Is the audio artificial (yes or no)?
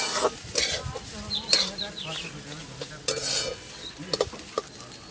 no